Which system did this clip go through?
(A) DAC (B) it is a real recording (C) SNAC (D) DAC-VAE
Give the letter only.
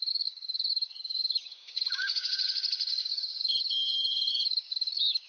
A